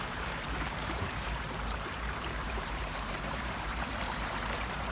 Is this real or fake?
fake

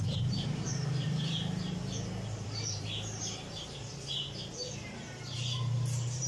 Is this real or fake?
fake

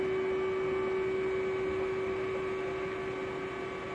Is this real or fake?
real